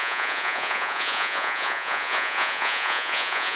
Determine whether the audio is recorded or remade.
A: remade